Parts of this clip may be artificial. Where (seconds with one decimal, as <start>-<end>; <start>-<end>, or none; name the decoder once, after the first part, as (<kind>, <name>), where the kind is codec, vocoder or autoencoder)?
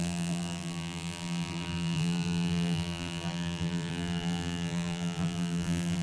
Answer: 0.0-6.0 (vocoder, BigVGAN v2)